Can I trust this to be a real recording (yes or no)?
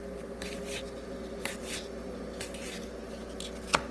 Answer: yes